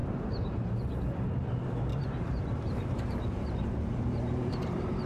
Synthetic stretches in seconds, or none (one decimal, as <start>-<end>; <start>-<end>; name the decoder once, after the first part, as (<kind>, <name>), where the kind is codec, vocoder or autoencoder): 0.0-0.8 (vocoder, BigVGAN v2); 1.9-5.1

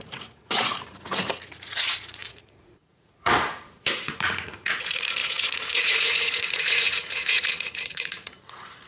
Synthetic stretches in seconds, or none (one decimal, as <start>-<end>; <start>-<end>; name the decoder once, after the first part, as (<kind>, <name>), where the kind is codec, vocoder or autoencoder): 0.0-8.9 (vocoder, Vocos)

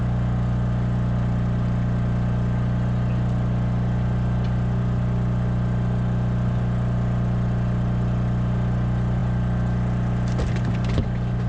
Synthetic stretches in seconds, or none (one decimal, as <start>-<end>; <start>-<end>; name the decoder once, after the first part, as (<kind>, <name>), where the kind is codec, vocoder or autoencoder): none

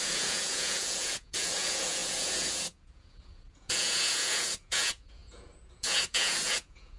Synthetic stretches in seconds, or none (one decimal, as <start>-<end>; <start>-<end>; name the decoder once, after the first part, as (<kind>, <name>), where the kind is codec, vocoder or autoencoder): 0.0-7.0 (vocoder, Vocos)